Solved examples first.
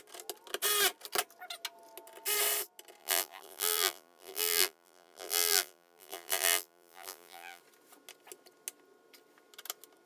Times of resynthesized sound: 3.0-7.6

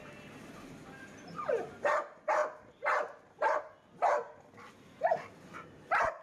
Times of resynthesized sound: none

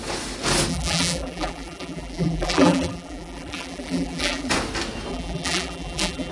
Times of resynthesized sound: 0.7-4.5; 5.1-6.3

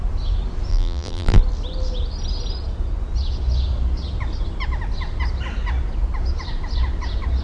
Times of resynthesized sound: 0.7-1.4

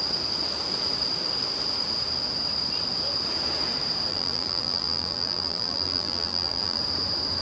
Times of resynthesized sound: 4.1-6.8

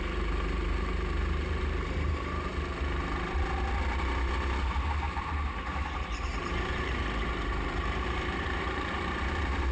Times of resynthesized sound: 0.0-2.5; 4.6-9.7

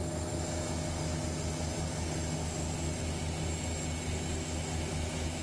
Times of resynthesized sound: none